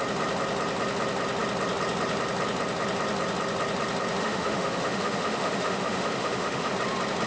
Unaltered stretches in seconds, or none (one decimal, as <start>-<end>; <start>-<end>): 0.0-4.2; 6.7-7.3